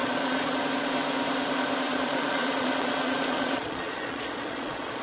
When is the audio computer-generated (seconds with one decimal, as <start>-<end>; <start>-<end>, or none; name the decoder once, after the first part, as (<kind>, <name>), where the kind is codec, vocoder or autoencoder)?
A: 0.0-0.6 (vocoder, Vocos); 1.9-5.0